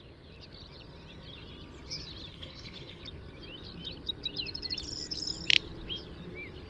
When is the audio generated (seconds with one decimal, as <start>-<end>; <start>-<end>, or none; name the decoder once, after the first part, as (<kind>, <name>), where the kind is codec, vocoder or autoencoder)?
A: 2.3-3.0 (codec, HILCodec)